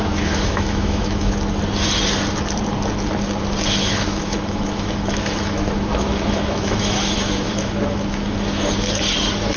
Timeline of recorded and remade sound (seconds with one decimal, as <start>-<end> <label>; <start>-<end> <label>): 0.0-1.3 remade; 1.3-3.8 recorded; 3.8-8.7 remade; 8.7-9.6 recorded